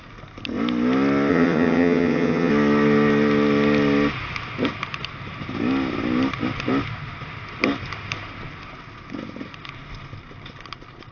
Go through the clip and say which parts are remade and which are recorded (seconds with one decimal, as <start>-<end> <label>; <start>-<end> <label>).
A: 0.0-1.3 recorded; 1.3-2.5 remade; 2.5-11.1 recorded